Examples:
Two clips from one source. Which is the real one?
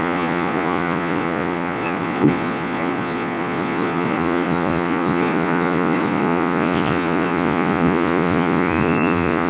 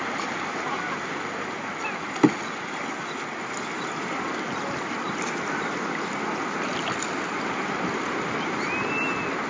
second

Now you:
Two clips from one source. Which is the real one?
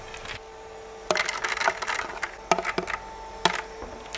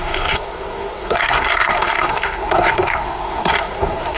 first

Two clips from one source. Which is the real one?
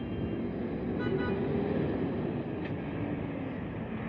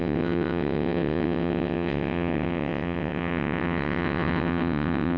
first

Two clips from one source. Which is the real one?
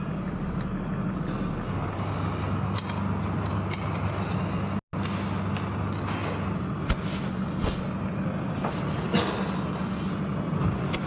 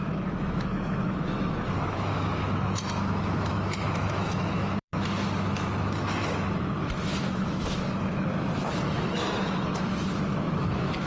first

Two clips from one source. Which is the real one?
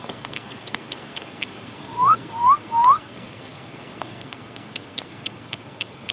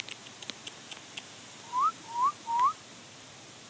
second